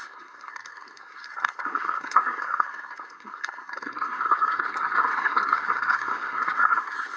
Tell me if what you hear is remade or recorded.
remade